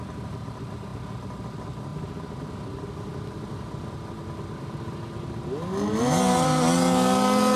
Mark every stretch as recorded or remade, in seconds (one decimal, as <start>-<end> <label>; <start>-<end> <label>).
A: 0.0-7.6 recorded